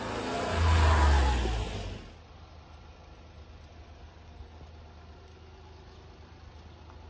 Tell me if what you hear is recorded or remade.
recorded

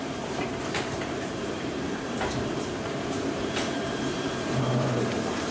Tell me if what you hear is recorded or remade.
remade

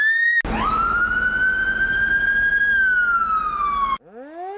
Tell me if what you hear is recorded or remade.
recorded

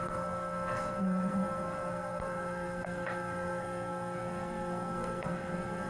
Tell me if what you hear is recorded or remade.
remade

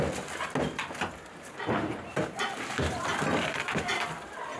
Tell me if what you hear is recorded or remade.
recorded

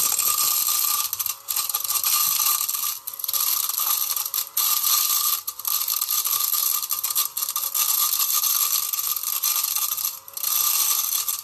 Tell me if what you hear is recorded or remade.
recorded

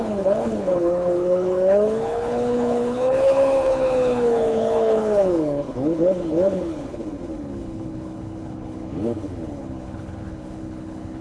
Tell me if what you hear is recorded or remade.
remade